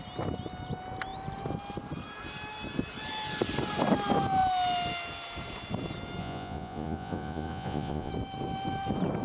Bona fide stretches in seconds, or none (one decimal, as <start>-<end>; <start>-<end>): 0.0-6.2; 8.1-9.2